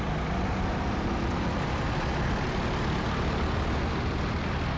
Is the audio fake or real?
real